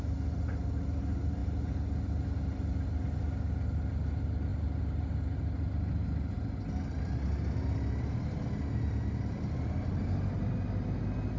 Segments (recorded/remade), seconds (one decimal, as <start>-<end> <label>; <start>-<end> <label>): 0.0-11.4 recorded